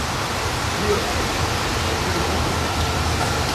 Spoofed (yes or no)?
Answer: no